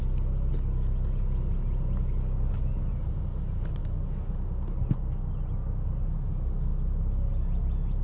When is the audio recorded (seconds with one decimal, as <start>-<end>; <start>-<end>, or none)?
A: 0.0-8.0